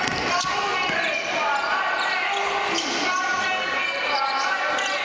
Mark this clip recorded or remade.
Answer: recorded